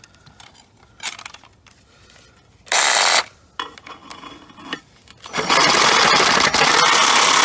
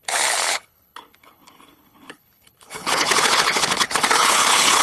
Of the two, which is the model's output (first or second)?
second